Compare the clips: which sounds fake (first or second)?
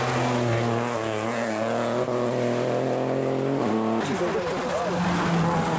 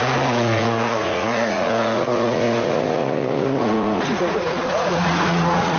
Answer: second